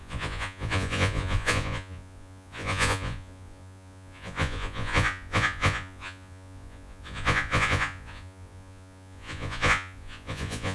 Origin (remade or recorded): remade